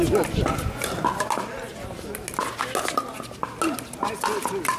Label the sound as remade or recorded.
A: recorded